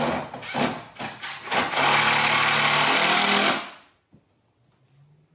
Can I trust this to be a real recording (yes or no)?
yes